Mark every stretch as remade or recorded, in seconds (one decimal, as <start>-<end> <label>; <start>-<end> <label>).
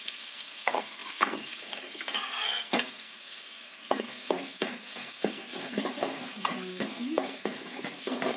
0.0-8.4 remade